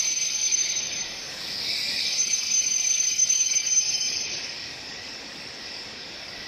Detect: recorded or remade remade